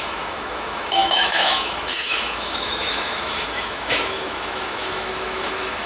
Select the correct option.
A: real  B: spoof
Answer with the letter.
B